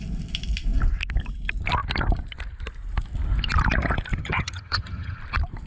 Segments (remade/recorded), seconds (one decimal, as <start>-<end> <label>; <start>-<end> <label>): 0.0-4.1 recorded; 4.1-5.2 remade; 5.2-5.7 recorded